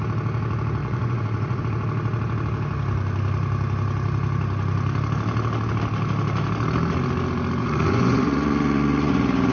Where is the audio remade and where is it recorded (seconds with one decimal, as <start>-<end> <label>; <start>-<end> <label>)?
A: 0.0-0.8 recorded; 0.8-1.6 remade; 1.6-7.6 recorded; 7.6-9.1 remade; 9.1-9.5 recorded